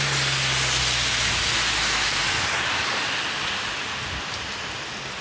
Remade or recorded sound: recorded